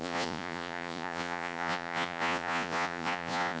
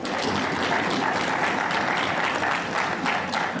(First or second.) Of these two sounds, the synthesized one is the first